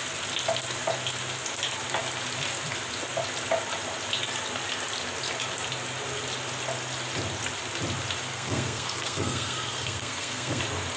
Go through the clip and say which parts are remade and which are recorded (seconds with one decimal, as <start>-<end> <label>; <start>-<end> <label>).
0.0-8.3 recorded; 8.3-10.6 remade; 10.6-11.0 recorded